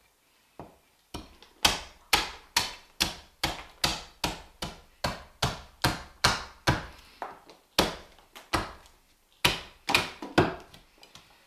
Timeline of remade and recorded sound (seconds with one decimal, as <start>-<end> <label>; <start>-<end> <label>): 0.0-11.5 recorded